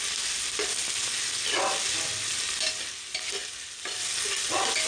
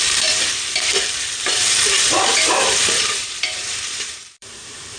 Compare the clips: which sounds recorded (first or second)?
first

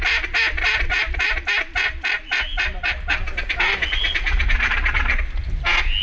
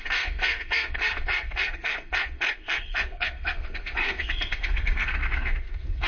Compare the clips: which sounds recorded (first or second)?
first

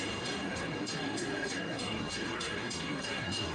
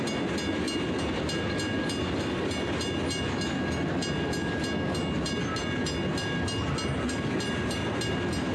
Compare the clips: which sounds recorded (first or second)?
second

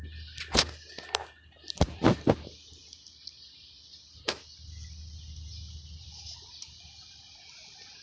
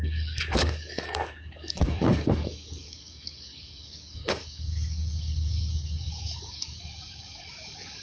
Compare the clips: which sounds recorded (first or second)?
first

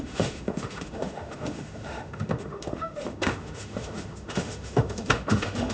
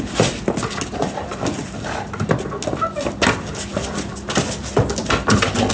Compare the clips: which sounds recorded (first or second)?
second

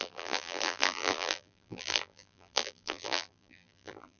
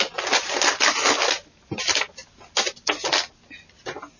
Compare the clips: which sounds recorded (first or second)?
second